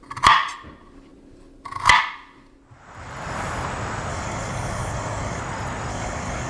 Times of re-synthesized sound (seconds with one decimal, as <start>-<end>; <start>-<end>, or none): 4.1-5.4; 5.9-6.5